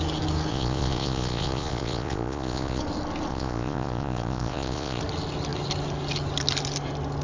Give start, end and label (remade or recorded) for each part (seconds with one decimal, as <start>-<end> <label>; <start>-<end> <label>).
0.0-0.5 recorded; 0.5-2.8 remade; 2.8-3.3 recorded; 3.3-5.0 remade; 5.0-7.2 recorded